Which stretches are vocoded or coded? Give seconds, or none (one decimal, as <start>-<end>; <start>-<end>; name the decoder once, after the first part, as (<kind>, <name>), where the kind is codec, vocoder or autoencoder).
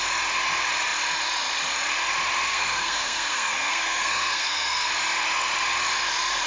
2.5-4.9 (codec, SNAC)